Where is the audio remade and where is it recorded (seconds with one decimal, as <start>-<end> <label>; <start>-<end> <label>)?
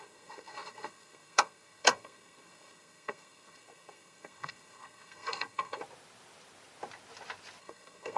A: 0.0-5.8 remade; 5.8-7.6 recorded; 7.6-8.2 remade